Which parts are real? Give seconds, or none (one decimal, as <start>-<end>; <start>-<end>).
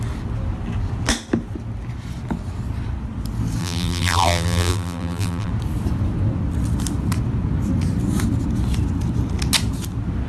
0.0-3.6; 5.5-10.3